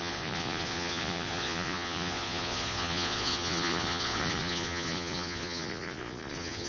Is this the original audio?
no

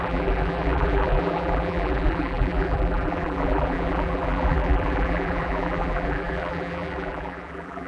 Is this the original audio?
no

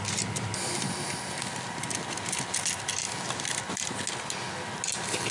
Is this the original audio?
yes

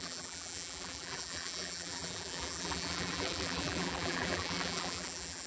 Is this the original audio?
no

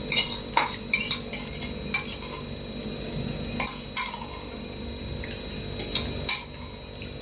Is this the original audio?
yes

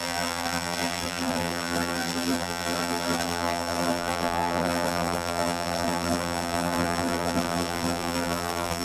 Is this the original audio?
no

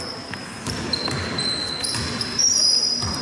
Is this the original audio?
yes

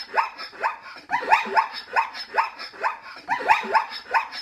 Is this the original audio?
no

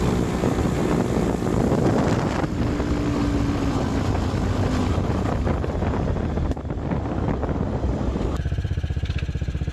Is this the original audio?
no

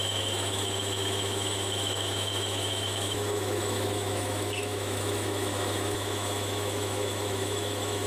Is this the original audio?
no